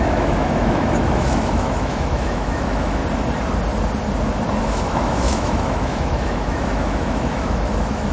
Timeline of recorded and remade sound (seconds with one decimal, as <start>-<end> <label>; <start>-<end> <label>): 0.0-3.0 remade; 3.0-4.6 recorded; 4.6-8.1 remade